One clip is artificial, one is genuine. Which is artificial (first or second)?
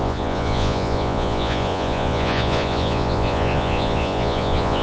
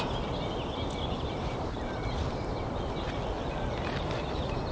first